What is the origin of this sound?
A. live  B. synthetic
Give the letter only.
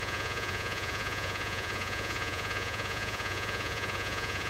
B